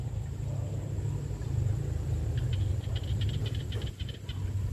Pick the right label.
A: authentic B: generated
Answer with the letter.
A